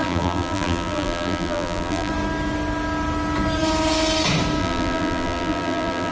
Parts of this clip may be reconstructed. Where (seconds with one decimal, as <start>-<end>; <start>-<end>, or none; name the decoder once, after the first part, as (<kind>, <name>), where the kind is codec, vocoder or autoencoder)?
0.0-2.1 (vocoder, BigVGAN v2); 4.6-6.1